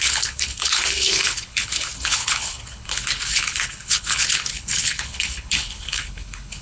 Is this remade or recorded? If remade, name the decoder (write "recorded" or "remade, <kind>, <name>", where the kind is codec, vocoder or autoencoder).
remade, codec, HILCodec